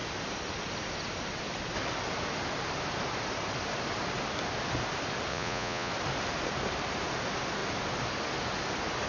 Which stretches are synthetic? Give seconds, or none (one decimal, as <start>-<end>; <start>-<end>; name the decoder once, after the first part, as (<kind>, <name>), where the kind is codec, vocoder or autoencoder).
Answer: 5.3-5.9 (vocoder, Vocos)